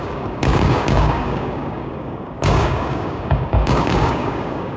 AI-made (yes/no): yes